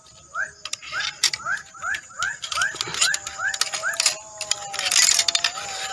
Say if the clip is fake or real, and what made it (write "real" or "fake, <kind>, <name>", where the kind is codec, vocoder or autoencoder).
real